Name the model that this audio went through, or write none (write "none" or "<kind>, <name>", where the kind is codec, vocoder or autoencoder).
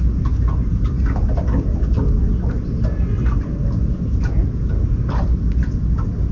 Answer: none